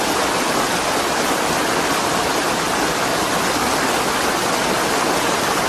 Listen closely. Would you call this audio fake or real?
real